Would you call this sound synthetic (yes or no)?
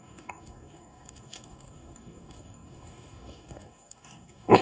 yes